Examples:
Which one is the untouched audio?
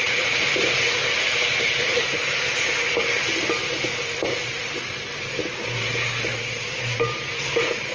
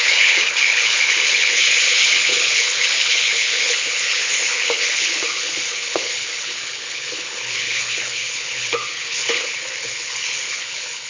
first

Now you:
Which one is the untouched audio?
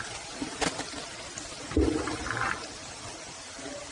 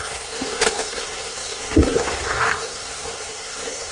first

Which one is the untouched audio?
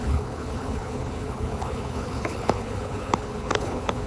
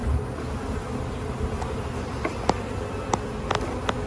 second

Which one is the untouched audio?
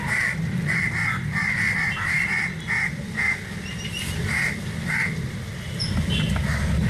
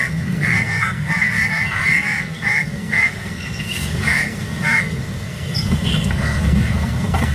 first